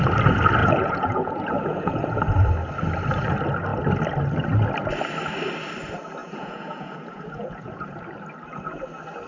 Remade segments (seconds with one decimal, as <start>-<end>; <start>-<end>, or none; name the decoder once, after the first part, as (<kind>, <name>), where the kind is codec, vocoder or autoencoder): 0.6-2.2 (vocoder, Vocos); 6.2-8.0